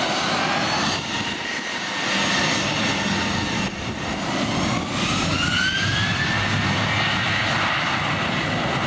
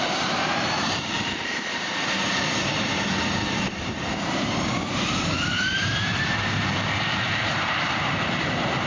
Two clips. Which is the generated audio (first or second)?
second